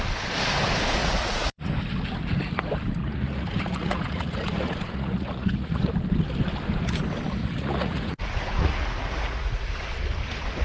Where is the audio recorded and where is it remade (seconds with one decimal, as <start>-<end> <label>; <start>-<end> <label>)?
0.0-1.0 recorded; 1.0-1.7 remade; 1.7-3.0 recorded; 3.0-5.9 remade; 5.9-7.4 recorded; 7.4-9.7 remade; 9.7-10.6 recorded